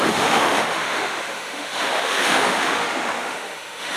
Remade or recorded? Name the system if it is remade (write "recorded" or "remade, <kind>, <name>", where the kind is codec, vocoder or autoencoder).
remade, autoencoder, DAC-VAE